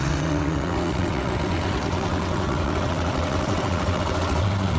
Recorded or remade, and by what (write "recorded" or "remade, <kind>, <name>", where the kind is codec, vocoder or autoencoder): remade, vocoder, WaveNeXt